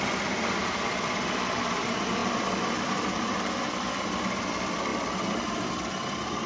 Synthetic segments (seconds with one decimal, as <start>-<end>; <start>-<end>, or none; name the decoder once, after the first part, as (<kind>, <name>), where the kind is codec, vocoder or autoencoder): 0.0-6.5 (vocoder, BigVGAN v2)